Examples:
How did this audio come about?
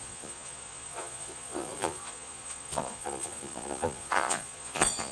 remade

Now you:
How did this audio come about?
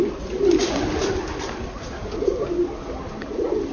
recorded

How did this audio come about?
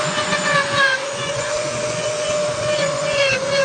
remade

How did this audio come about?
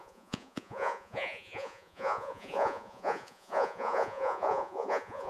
remade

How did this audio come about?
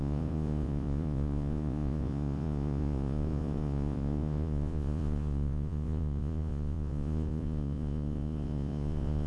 remade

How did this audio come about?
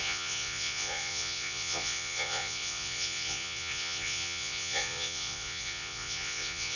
remade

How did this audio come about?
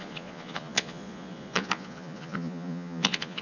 remade